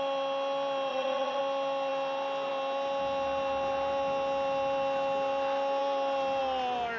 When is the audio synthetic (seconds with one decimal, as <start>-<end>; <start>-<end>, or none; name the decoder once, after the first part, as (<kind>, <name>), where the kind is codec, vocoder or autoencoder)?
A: 0.9-1.4 (vocoder, Vocos)

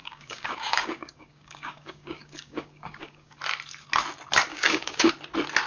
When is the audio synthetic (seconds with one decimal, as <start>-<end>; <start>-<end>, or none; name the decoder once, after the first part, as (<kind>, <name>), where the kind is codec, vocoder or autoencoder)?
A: 0.0-3.4 (codec, DAC); 4.5-5.1